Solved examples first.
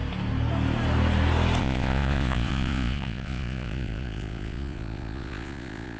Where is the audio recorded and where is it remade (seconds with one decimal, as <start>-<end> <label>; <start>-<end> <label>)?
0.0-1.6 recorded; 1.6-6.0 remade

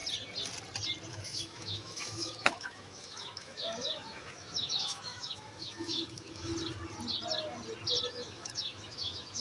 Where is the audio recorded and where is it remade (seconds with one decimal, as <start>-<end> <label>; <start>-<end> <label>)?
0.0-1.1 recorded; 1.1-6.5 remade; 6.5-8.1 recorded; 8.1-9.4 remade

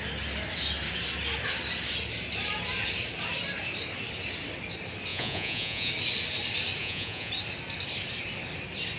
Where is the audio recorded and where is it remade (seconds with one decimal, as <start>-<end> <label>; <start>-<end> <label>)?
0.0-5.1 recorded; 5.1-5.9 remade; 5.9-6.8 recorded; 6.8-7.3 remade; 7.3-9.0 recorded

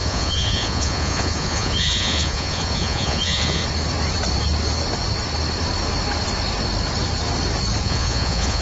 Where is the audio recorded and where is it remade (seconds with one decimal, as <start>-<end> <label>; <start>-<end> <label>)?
0.0-3.6 remade; 3.6-7.8 recorded; 7.8-8.6 remade

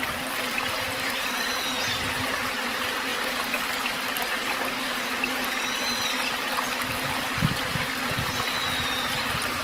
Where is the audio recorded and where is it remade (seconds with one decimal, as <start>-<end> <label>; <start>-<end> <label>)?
0.0-9.6 recorded